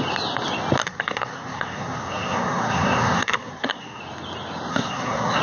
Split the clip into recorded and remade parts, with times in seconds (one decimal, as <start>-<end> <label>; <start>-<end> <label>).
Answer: 0.0-0.8 recorded; 0.8-4.0 remade; 4.0-4.7 recorded; 4.7-5.4 remade